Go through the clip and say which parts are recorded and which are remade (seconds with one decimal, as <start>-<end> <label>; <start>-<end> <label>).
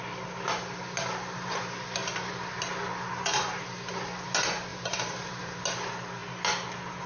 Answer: 0.0-4.7 recorded; 4.7-5.6 remade; 5.6-7.1 recorded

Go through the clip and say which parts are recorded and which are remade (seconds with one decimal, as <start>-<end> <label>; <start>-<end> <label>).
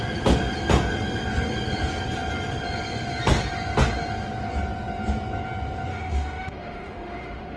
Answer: 0.0-5.9 recorded; 5.9-7.6 remade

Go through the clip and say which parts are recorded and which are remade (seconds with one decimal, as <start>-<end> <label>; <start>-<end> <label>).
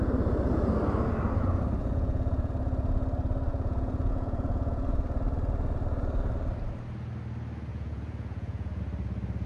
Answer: 0.0-1.8 recorded; 1.8-2.5 remade; 2.5-3.5 recorded; 3.5-4.9 remade; 4.9-7.7 recorded; 7.7-8.8 remade; 8.8-9.5 recorded